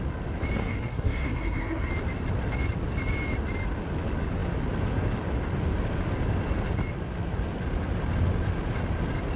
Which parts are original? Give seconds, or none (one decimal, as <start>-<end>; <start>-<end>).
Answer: 0.0-0.6; 1.9-9.4